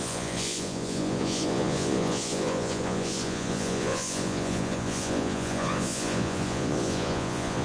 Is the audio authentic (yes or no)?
no